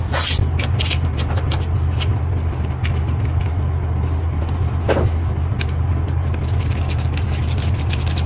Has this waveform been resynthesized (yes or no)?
no